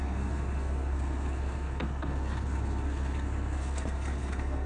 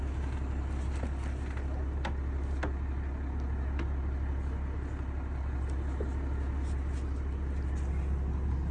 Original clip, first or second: second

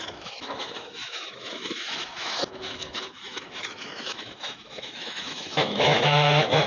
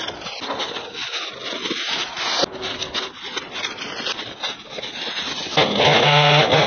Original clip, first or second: second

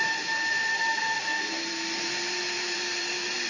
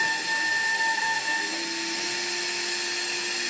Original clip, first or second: second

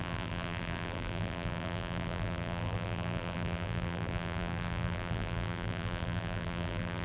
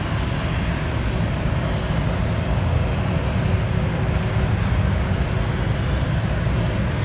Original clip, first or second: second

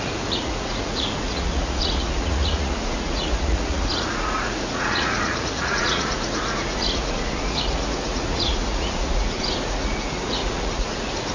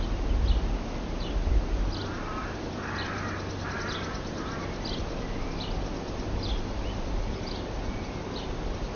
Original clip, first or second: second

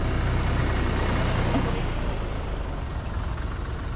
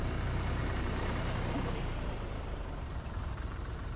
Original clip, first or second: first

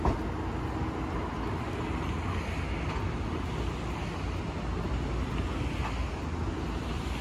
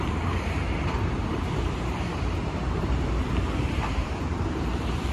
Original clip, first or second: first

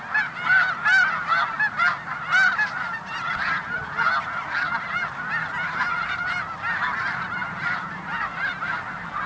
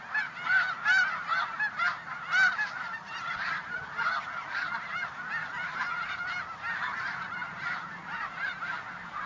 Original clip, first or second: first